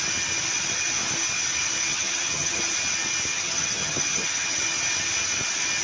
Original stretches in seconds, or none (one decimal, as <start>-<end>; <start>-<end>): 0.0-1.9; 2.6-3.3; 4.6-5.8